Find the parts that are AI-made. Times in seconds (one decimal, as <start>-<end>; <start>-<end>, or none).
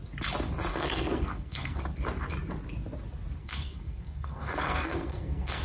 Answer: 0.7-1.8; 3.4-5.6